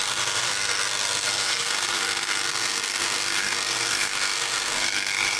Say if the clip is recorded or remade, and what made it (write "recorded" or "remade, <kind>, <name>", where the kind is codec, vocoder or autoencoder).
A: remade, codec, SNAC